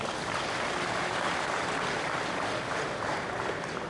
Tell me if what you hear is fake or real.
real